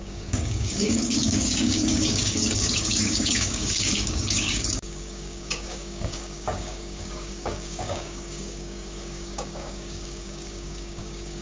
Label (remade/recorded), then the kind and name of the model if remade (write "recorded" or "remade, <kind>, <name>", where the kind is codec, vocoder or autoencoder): remade, codec, DAC